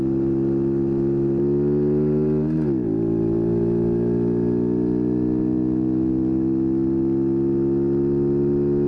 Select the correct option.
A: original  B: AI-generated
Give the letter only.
A